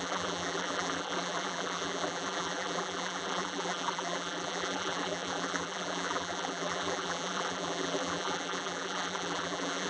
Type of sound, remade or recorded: remade